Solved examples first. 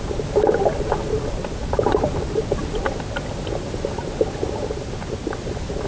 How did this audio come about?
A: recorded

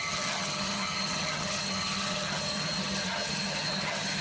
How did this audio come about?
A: remade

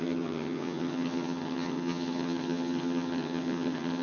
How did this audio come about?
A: remade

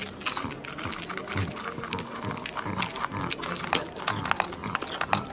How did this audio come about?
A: recorded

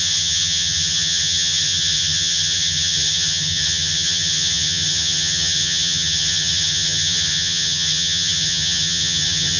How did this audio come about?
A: remade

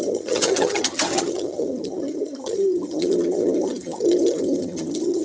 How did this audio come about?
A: remade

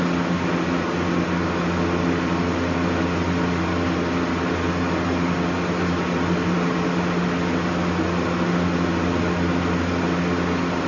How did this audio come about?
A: recorded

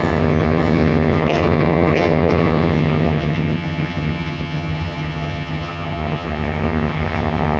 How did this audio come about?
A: remade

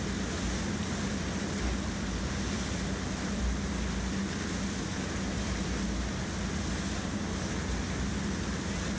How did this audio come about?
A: recorded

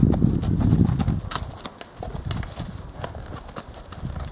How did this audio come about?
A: recorded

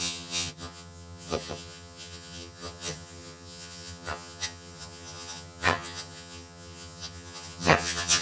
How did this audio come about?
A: remade